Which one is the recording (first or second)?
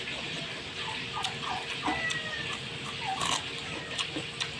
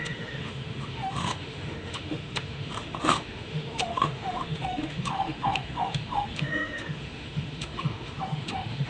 first